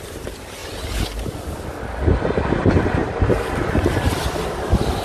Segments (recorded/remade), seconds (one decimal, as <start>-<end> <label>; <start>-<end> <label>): 0.0-3.0 recorded; 3.0-4.3 remade; 4.3-5.0 recorded